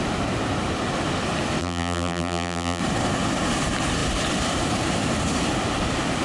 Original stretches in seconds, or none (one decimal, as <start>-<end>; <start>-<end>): 0.0-1.6; 2.8-6.2